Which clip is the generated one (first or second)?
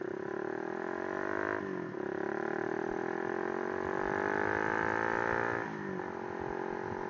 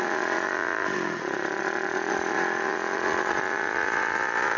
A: second